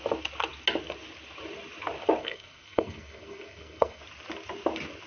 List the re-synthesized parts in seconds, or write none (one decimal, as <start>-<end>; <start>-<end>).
2.2-4.0